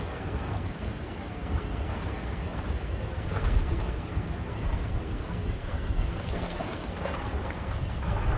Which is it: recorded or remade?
remade